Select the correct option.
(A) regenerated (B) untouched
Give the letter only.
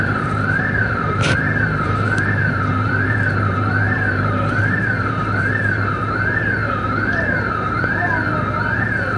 A